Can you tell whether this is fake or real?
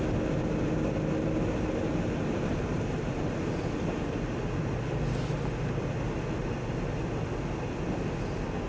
real